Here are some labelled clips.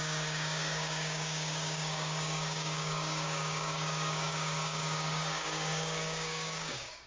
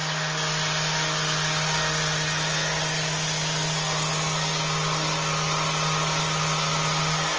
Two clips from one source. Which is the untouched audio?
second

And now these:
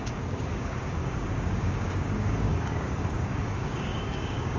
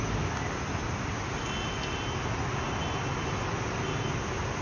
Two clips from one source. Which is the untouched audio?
second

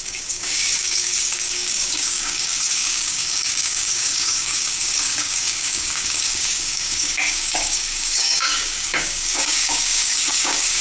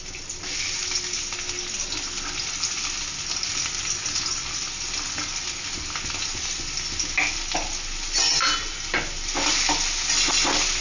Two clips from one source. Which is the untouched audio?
second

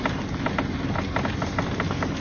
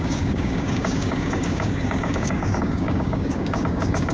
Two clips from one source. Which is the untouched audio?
first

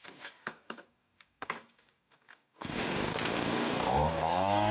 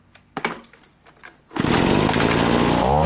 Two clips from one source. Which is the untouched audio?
second